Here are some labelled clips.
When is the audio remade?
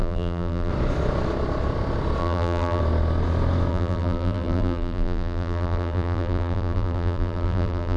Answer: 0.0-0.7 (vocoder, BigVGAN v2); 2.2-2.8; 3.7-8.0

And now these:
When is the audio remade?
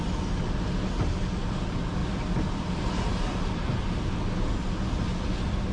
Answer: none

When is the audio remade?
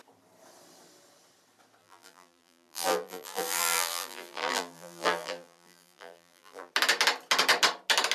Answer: 1.8-6.7 (vocoder, BigVGAN v2)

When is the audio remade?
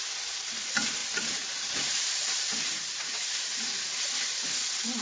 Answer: 1.0-4.0 (vocoder, BigVGAN v2)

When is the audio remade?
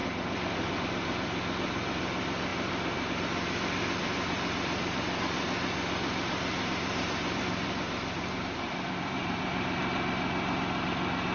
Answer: 2.5-3.1 (vocoder, BigVGAN v2); 4.0-4.9; 6.1-9.8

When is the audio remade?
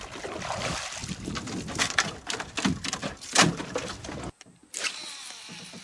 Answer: 1.0-1.6 (vocoder, BigVGAN v2)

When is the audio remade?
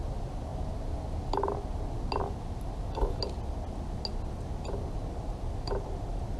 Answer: none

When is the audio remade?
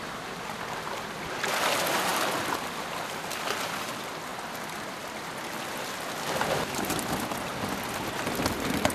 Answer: none